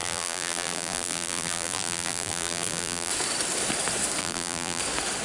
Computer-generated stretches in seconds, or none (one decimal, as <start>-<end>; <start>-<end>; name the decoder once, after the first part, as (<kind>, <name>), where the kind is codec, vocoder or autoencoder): 0.0-3.1 (vocoder, BigVGAN v2); 4.2-4.8